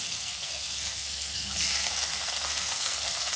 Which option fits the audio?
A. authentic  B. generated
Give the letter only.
B